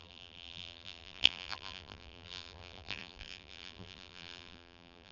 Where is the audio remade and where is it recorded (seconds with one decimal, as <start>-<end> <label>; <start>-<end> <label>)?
0.0-5.1 remade